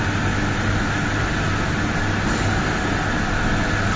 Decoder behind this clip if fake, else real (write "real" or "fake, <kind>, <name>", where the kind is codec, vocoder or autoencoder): real